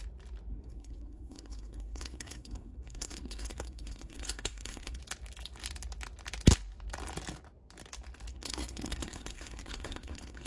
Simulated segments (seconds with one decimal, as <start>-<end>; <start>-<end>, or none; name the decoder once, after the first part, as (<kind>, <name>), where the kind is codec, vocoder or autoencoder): 0.5-5.0 (codec, SNAC); 8.3-10.5